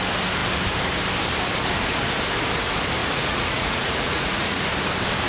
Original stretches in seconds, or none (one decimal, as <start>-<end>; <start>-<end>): 0.0-3.0; 4.6-5.3